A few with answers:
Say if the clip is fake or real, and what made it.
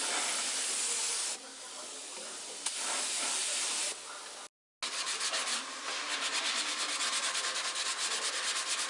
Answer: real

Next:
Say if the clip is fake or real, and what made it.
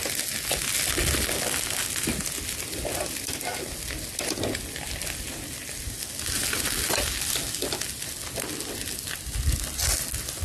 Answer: real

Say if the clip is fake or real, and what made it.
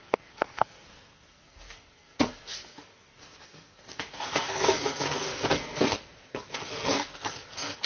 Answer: fake, codec, SNAC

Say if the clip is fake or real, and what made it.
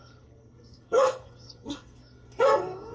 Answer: fake, codec, SNAC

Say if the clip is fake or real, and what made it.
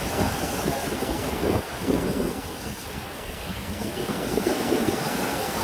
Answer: fake, codec, SNAC